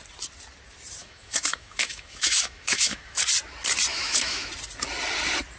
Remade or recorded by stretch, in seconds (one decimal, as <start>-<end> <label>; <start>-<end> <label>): 0.0-1.0 recorded; 1.0-3.2 remade; 3.2-3.9 recorded; 3.9-4.5 remade; 4.5-5.6 recorded